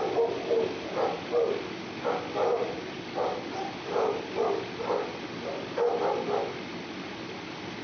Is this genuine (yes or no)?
yes